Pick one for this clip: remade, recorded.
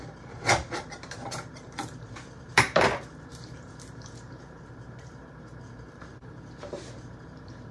remade